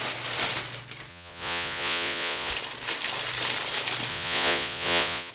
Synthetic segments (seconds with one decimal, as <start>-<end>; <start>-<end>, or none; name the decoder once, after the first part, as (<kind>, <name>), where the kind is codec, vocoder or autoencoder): 1.1-2.5 (vocoder, Vocos); 4.1-5.3